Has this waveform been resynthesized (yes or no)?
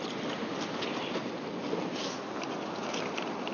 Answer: no